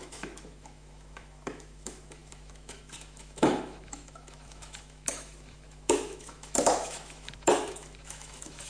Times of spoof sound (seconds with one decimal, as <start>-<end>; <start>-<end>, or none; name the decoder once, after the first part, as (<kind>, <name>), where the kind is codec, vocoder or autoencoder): 0.0-8.7 (autoencoder, DAC-VAE)